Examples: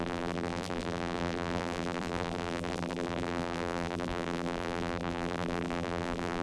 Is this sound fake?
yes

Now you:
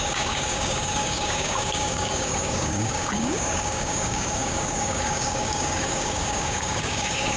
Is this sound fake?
yes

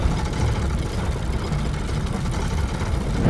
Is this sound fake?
no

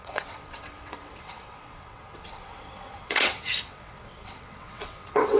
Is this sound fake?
yes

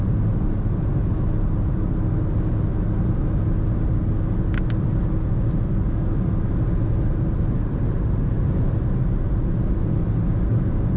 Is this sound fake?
no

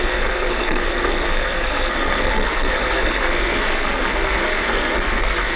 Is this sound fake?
yes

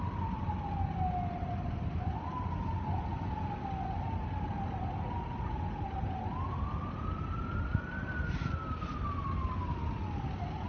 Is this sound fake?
no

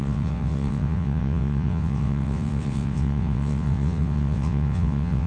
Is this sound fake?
yes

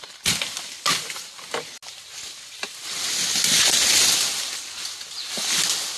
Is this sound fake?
no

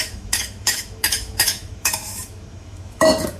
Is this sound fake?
yes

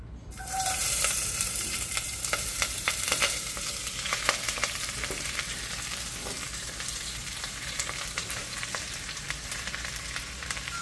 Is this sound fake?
yes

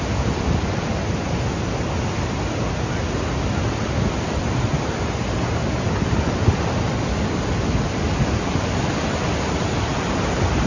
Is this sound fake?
no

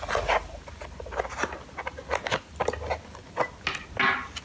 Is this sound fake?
no